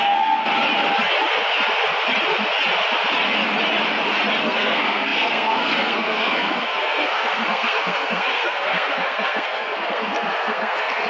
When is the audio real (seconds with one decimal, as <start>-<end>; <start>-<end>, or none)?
0.4-4.4